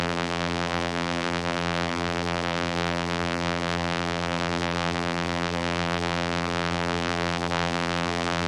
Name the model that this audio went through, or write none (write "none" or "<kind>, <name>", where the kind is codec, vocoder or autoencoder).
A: vocoder, BigVGAN v2